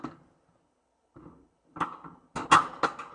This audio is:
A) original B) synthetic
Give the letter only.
A